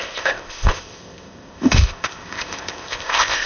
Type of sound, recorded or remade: remade